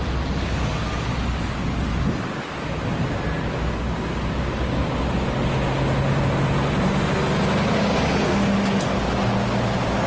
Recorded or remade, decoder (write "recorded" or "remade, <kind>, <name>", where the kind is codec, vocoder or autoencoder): recorded